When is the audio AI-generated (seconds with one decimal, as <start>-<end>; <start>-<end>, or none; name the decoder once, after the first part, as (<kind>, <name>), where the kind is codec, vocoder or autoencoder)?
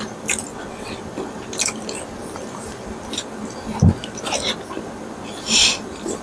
0.5-1.0 (vocoder, WaveNeXt)